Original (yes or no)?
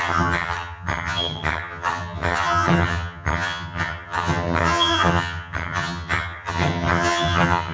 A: no